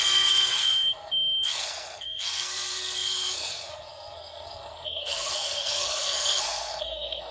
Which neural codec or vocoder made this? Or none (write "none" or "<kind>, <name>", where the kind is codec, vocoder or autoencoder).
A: codec, SNAC